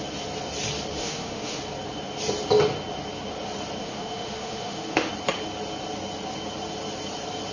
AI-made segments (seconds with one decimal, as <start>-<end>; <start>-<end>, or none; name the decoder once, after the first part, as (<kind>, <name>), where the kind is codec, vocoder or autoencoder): 1.0-1.6 (autoencoder, DAC-VAE); 3.8-5.1